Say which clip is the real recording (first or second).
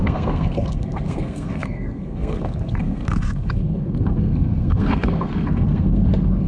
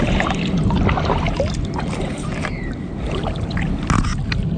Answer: second